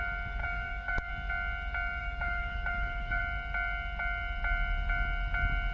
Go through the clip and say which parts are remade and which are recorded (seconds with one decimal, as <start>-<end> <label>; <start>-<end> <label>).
0.0-0.4 recorded; 0.4-1.1 remade; 1.1-2.0 recorded; 2.0-3.2 remade; 3.2-5.7 recorded